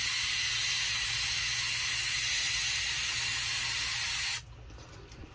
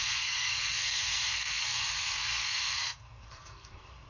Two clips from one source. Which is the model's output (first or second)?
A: second